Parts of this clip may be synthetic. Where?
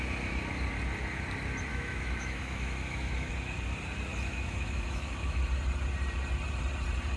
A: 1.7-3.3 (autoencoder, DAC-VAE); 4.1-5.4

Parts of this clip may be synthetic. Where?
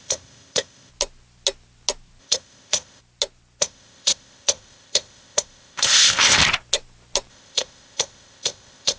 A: 0.0-0.9 (codec, ZipCodec); 2.2-3.0; 3.6-6.4; 7.3-9.0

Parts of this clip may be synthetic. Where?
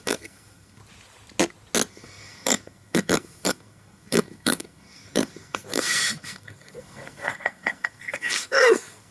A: 0.0-0.8 (codec, SNAC); 1.9-9.1